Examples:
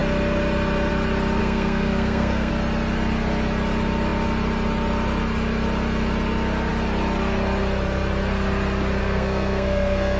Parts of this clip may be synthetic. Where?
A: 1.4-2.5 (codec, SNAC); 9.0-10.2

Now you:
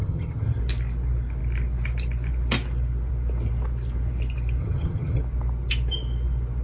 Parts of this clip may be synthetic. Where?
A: 0.0-0.6 (vocoder, HiFi-GAN); 4.6-5.2

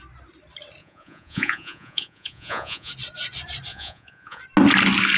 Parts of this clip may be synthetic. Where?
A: 0.8-2.9 (vocoder, Vocos); 3.7-4.4

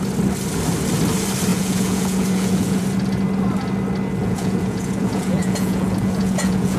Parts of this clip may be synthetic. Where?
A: 1.5-2.8 (vocoder, Vocos); 4.2-6.8